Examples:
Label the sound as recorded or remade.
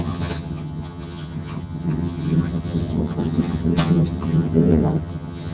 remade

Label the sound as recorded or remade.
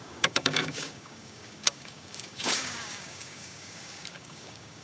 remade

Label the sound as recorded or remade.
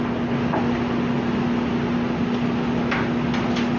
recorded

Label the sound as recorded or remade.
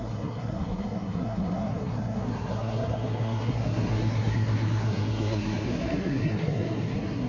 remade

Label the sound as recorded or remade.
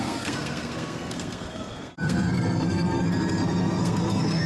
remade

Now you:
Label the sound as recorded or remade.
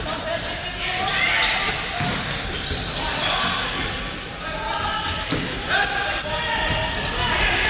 recorded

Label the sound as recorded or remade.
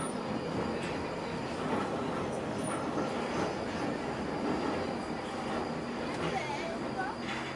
recorded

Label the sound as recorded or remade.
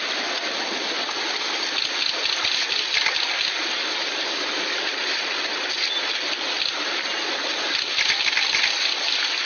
recorded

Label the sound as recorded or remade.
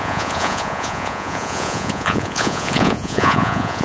remade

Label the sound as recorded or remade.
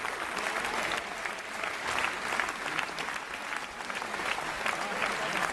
recorded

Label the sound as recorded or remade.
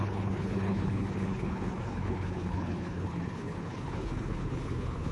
remade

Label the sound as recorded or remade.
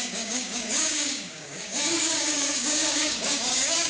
remade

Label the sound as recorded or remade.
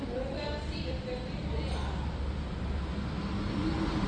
recorded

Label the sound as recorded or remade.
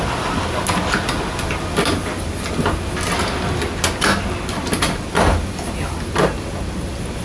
recorded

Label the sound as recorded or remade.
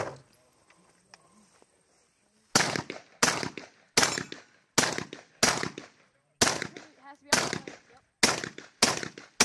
recorded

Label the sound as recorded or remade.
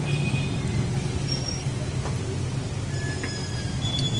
recorded